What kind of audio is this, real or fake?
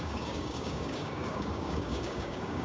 fake